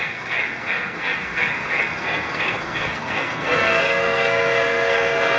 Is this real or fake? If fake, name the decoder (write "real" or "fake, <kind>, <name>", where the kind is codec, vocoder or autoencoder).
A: fake, codec, SNAC